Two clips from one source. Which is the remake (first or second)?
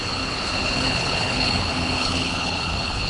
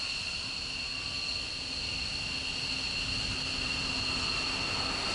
first